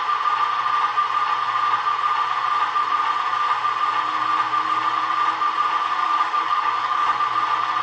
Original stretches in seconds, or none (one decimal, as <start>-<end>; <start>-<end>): 0.0-6.0; 7.2-7.8